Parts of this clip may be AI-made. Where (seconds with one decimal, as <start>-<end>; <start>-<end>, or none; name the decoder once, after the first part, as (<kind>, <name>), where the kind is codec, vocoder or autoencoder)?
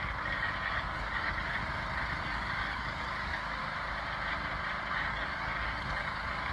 0.0-1.6 (codec, DAC); 2.2-3.6; 4.9-6.5